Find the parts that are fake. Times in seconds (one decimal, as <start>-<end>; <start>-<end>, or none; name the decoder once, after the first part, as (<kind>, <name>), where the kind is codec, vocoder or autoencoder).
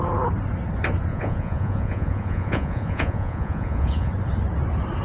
1.1-4.1 (vocoder, Vocos)